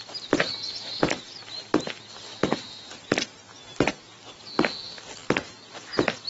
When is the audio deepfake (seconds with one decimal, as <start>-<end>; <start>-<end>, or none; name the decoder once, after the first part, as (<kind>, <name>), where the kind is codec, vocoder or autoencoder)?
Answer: none